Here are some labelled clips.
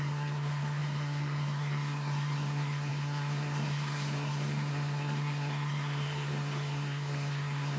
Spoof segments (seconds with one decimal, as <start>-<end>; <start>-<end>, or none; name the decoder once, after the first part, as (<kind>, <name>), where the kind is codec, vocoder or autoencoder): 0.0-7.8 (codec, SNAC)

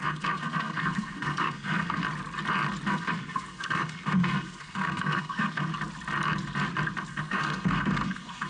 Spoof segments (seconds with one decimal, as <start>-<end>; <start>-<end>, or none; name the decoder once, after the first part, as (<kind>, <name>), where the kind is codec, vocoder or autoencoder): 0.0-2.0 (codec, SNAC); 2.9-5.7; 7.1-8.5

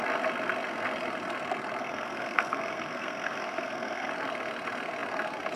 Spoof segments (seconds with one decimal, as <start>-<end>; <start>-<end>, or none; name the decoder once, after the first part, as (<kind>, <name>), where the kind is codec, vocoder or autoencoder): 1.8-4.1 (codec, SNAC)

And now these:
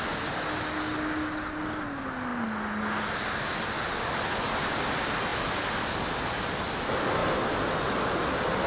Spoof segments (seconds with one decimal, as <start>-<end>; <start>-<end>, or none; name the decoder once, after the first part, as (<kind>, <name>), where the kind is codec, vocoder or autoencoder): none

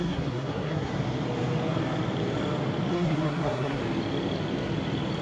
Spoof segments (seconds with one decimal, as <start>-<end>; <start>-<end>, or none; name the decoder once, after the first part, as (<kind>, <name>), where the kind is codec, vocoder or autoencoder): 0.0-0.9 (codec, SNAC); 2.9-3.8

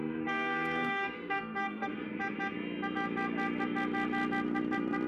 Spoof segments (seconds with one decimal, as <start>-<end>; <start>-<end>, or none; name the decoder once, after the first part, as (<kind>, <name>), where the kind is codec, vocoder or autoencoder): 0.0-1.9 (codec, SNAC)

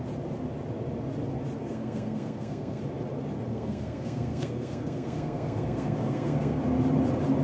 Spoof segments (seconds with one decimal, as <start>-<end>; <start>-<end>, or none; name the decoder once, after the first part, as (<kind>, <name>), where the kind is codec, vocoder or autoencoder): 1.6-2.8 (codec, SNAC); 3.5-6.6

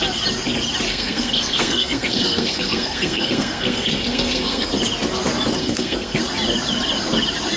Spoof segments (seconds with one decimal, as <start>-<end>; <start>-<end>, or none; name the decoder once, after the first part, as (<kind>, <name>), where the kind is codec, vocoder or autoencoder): 0.9-4.7 (codec, SNAC); 5.6-6.2